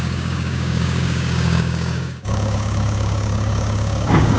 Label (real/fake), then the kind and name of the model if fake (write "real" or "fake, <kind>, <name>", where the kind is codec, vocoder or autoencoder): fake, codec, DAC